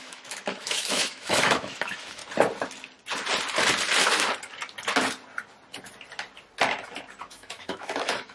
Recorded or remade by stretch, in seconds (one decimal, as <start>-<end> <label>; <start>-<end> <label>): 0.0-2.2 remade; 2.2-7.2 recorded; 7.2-8.3 remade